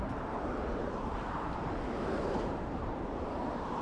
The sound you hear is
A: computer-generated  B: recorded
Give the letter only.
A